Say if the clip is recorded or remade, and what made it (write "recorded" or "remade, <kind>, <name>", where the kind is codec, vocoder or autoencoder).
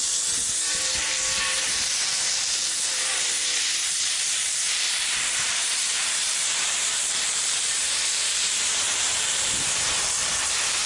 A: remade, vocoder, BigVGAN v2